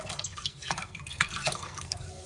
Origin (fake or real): fake